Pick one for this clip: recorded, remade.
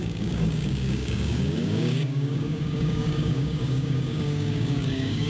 remade